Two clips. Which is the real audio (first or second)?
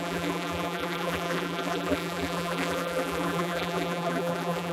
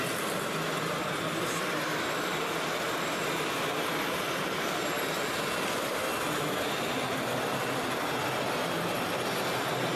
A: second